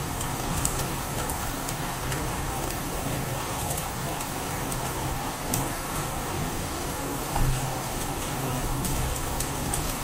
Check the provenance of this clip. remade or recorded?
remade